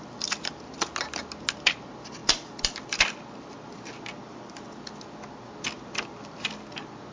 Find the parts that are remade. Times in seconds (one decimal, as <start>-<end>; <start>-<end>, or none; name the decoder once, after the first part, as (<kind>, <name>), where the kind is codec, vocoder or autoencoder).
none